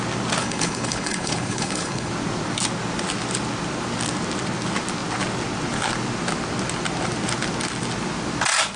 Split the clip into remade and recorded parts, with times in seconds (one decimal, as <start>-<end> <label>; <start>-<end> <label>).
0.0-0.4 recorded; 0.4-2.1 remade; 2.1-8.8 recorded